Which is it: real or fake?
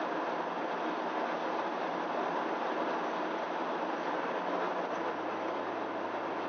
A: real